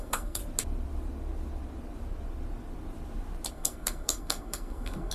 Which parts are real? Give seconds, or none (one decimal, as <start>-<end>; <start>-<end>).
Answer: 0.4-3.5